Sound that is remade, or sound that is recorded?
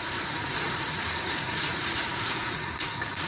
remade